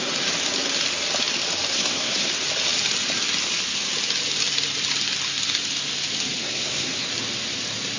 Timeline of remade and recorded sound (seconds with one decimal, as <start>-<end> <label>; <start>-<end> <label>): 0.0-1.7 recorded; 1.7-2.3 remade; 2.3-6.4 recorded; 6.4-7.1 remade; 7.1-8.0 recorded